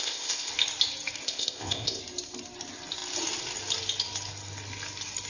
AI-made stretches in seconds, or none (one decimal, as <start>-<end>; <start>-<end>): 0.0-0.5; 1.2-2.0